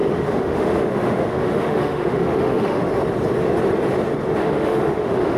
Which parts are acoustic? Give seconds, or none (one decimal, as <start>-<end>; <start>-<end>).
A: 2.8-4.4